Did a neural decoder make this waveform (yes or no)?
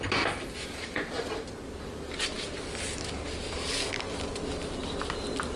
no